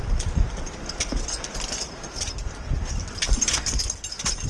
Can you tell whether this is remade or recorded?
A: recorded